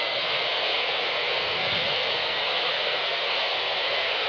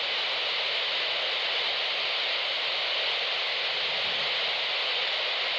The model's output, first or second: first